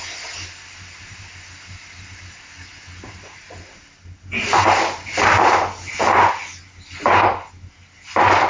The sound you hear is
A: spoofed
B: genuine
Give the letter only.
B